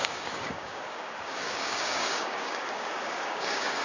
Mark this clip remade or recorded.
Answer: remade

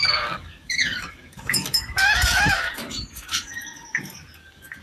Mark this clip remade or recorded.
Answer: remade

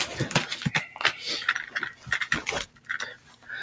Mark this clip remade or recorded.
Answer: recorded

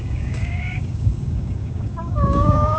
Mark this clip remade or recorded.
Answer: remade